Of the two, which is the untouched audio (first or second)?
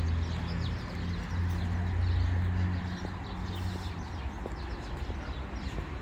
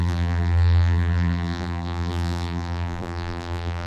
first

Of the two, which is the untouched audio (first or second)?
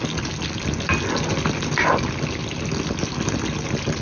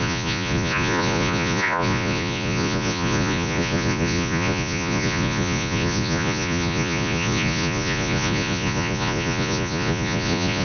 first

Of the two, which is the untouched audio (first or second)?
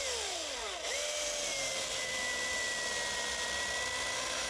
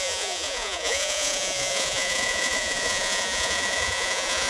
first